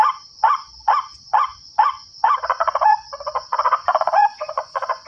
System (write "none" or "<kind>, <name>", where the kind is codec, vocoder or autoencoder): vocoder, Vocos